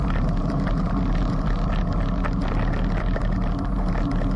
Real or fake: real